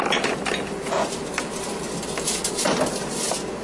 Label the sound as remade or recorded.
recorded